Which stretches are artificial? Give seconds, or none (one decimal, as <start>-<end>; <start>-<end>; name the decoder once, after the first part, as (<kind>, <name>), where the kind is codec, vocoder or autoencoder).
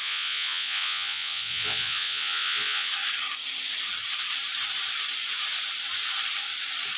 0.0-2.9 (vocoder, Vocos)